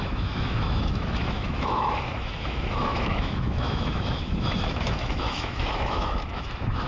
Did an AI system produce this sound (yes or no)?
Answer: yes